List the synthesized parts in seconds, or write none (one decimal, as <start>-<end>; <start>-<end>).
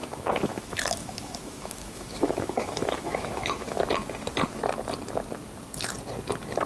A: 0.0-3.8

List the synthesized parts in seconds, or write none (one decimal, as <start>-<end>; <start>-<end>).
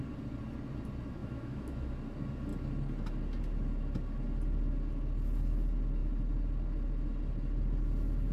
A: 1.2-1.9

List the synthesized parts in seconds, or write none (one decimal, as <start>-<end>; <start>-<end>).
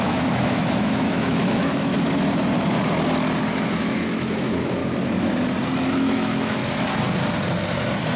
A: 0.0-1.9; 3.7-4.8; 5.9-6.6